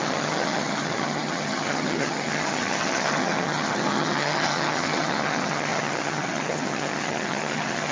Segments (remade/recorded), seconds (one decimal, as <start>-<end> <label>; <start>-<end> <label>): 0.0-7.9 remade